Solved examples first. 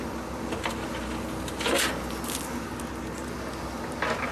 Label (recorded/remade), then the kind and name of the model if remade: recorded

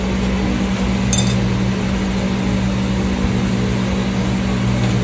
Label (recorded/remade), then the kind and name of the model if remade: recorded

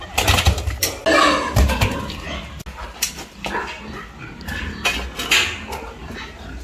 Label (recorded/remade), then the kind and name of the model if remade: recorded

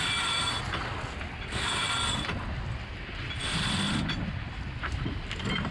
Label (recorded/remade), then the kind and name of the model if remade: recorded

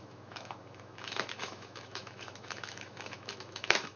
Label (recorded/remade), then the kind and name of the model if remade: remade, autoencoder, DAC-VAE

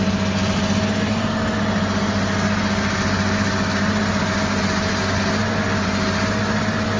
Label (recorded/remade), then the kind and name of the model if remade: recorded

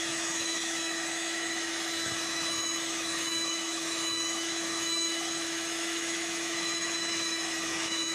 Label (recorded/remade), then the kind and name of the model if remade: remade, autoencoder, DAC-VAE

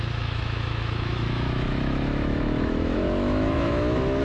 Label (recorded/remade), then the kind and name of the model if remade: remade, autoencoder, DAC-VAE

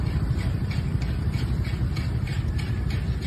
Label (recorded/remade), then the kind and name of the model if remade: recorded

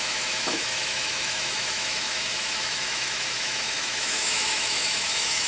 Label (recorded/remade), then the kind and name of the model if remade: remade, autoencoder, DAC-VAE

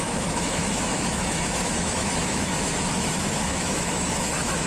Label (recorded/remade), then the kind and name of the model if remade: remade, autoencoder, DAC-VAE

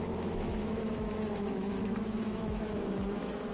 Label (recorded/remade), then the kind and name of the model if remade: remade, autoencoder, DAC-VAE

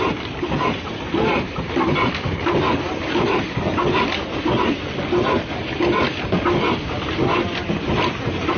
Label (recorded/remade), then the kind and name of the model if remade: recorded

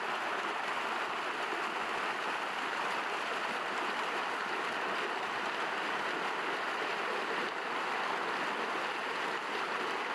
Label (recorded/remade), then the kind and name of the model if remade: recorded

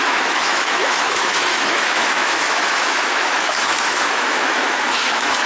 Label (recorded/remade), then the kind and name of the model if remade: remade, autoencoder, DAC-VAE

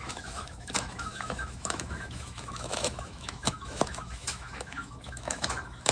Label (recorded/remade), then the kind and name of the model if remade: remade, autoencoder, DAC-VAE